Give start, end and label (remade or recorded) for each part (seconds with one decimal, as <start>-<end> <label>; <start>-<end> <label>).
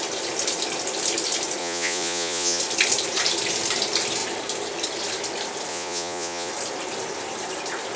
0.0-1.6 recorded; 1.6-2.6 remade; 2.6-5.7 recorded; 5.7-6.5 remade; 6.5-8.0 recorded